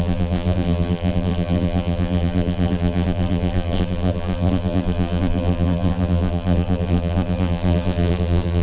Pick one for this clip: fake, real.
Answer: fake